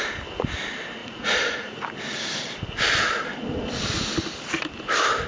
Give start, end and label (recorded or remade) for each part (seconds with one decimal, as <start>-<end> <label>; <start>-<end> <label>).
0.0-1.0 recorded; 1.0-1.9 remade; 1.9-5.3 recorded